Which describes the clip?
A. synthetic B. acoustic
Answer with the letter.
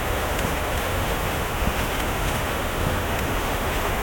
A